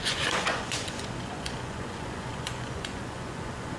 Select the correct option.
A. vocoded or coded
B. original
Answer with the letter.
A